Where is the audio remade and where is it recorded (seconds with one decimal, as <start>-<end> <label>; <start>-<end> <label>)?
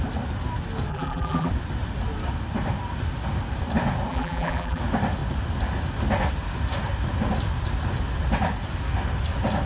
0.0-0.9 recorded; 0.9-1.5 remade; 1.5-4.1 recorded; 4.1-4.8 remade; 4.8-9.7 recorded